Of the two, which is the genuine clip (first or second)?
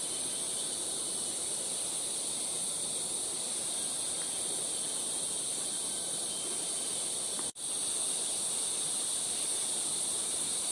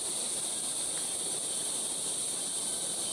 first